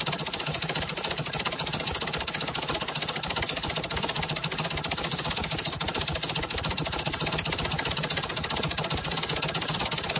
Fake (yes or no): no